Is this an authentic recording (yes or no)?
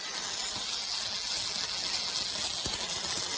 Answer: yes